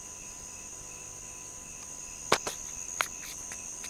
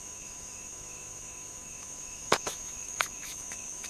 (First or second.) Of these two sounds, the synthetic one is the second